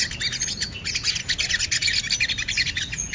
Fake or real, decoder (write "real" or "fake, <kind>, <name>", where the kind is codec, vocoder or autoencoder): real